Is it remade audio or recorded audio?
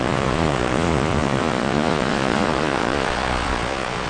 remade